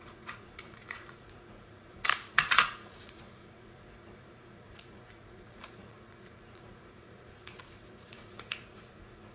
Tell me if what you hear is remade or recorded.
remade